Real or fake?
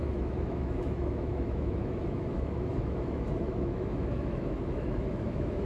fake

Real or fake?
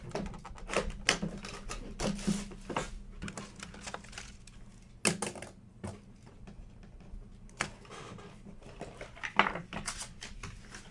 real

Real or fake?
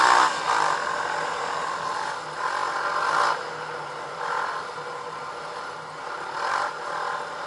real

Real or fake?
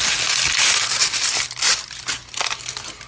real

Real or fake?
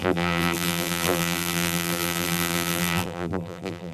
fake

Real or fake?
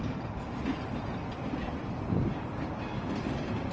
real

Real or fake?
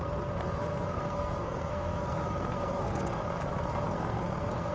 fake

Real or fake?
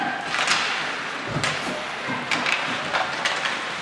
real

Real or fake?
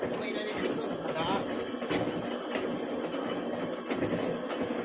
real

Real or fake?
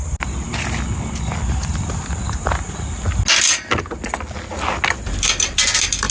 real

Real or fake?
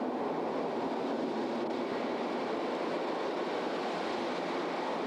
real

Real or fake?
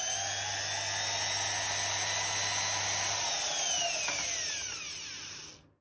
real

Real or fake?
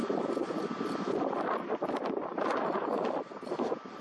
real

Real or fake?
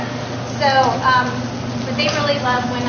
real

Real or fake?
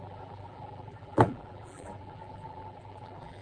fake